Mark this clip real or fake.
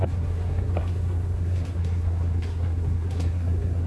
fake